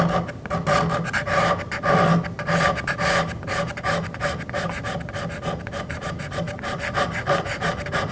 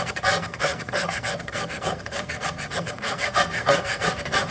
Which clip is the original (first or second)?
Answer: first